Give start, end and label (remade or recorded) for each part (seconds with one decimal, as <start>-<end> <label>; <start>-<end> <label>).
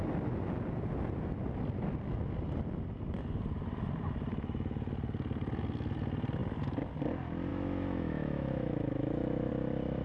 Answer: 0.0-7.5 recorded; 7.5-9.5 remade; 9.5-10.0 recorded